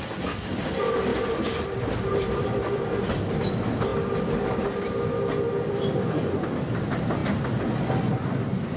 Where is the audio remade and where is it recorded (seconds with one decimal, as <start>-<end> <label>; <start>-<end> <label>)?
0.0-3.9 remade; 3.9-5.7 recorded; 5.7-7.2 remade; 7.2-8.1 recorded; 8.1-8.8 remade